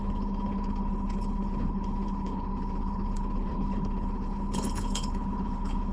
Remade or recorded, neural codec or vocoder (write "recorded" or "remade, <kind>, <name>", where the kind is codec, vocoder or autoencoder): remade, codec, HILCodec